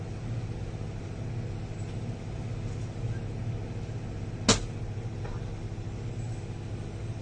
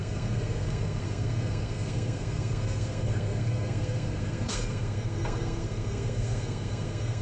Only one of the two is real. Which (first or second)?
first